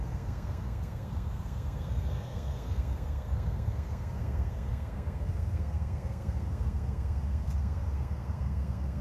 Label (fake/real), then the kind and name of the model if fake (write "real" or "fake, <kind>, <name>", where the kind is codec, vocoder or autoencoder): fake, codec, SNAC